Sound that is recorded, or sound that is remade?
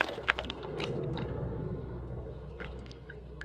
remade